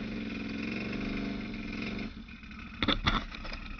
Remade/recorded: recorded